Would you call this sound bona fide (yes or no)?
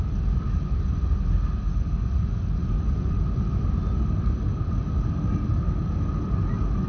yes